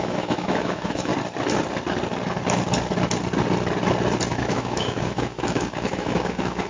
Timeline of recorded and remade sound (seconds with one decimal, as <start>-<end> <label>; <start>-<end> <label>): 0.0-1.1 remade; 1.1-4.3 recorded; 4.3-6.7 remade